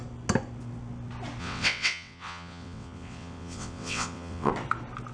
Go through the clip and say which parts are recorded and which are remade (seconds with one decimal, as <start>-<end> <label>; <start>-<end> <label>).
0.0-1.4 recorded; 1.4-4.5 remade; 4.5-5.1 recorded